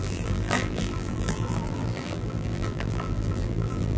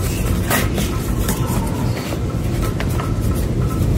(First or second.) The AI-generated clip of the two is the first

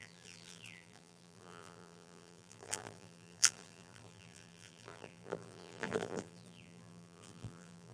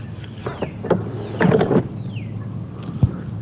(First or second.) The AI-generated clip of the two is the first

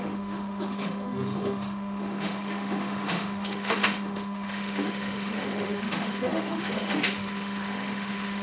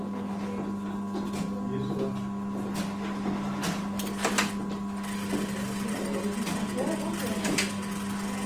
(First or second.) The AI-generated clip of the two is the first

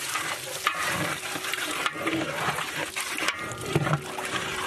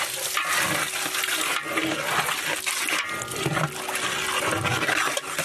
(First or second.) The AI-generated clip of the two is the first